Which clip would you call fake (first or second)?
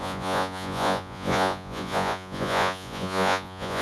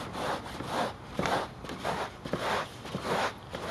first